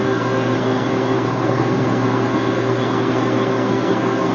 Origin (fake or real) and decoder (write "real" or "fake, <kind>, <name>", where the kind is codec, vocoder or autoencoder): fake, codec, SNAC